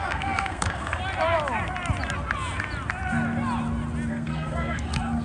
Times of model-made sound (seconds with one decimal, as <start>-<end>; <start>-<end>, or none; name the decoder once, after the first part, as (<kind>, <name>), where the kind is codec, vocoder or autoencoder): 0.0-1.0 (codec, SNAC); 4.1-5.2